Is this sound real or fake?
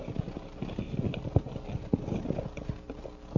real